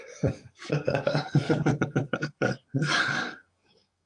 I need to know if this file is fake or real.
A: fake